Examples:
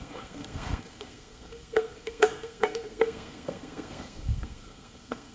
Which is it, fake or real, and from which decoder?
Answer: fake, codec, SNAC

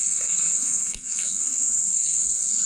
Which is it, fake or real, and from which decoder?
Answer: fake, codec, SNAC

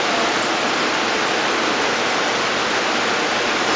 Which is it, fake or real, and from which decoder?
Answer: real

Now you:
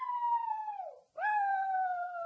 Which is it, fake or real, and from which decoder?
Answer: real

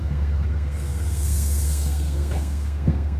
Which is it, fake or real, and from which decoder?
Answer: fake, codec, SNAC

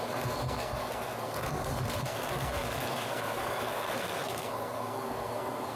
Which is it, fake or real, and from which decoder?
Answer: fake, codec, SNAC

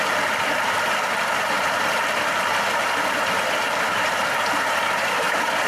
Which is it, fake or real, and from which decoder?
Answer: real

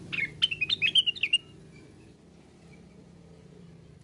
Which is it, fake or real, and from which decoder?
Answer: real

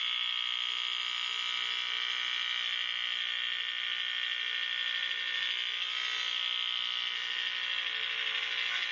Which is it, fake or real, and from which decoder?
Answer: real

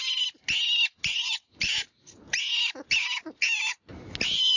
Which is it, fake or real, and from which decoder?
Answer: real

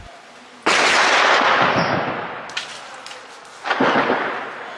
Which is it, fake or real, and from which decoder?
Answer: real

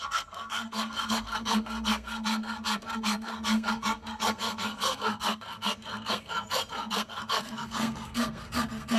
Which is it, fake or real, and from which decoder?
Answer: fake, codec, SNAC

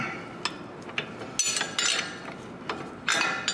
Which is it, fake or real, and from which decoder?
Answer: real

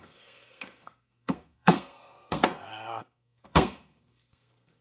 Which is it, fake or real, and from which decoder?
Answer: fake, codec, SNAC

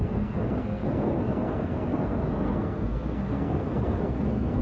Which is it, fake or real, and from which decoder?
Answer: fake, codec, SNAC